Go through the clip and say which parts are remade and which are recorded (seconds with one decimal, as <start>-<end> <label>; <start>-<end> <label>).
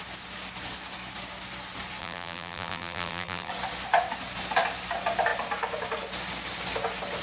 0.0-2.0 recorded; 2.0-3.5 remade; 3.5-7.2 recorded